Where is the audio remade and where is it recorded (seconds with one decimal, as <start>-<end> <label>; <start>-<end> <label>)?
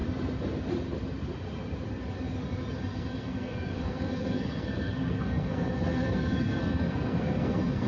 0.0-2.9 recorded; 2.9-7.9 remade